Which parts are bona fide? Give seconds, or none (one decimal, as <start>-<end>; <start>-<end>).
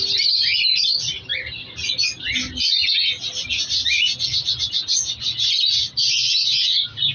0.0-7.1